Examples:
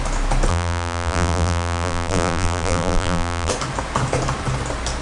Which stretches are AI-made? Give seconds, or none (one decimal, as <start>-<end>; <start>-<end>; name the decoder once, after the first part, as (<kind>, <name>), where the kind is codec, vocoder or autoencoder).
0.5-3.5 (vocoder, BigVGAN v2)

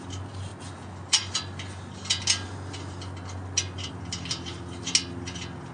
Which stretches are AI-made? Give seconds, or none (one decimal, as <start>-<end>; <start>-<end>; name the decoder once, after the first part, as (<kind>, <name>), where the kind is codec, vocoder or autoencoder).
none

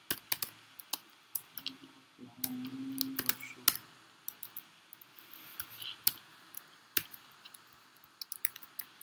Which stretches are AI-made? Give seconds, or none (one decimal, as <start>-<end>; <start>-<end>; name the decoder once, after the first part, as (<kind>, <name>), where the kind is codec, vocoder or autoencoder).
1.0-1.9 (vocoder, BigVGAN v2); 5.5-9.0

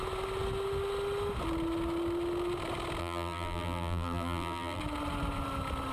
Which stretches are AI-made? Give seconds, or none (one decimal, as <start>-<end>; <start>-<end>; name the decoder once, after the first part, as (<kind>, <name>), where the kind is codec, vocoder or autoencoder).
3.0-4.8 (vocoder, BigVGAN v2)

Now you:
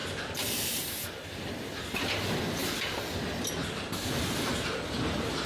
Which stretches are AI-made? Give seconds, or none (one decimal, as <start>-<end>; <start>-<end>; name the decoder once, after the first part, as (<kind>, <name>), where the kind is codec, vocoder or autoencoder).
0.0-0.7 (vocoder, BigVGAN v2)

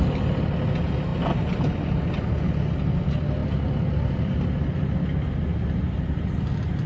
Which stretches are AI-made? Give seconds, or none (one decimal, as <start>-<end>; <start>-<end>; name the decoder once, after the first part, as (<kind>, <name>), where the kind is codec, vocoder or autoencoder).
5.5-6.2 (vocoder, BigVGAN v2)

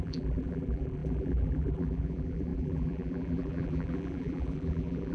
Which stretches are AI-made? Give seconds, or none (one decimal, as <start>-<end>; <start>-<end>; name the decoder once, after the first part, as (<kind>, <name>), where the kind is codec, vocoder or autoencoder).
0.0-5.1 (vocoder, BigVGAN v2)